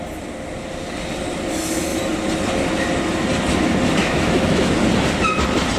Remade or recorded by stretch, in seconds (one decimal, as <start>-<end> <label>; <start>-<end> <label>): 0.0-4.0 recorded; 4.0-4.7 remade; 4.7-5.8 recorded